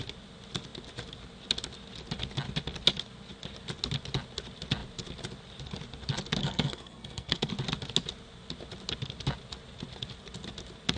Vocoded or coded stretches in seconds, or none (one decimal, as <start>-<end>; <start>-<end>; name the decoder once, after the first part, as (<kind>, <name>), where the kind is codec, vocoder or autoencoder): 6.4-7.5 (codec, SNAC)